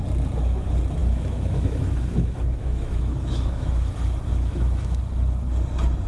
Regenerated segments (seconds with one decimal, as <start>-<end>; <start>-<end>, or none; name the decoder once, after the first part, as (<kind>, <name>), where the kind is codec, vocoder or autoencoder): 1.0-3.9 (autoencoder, DAC-VAE); 4.3-5.0